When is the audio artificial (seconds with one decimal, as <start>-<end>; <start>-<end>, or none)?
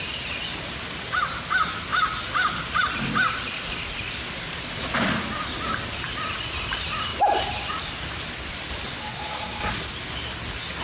9.0-9.7